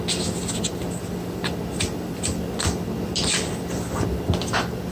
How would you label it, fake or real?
real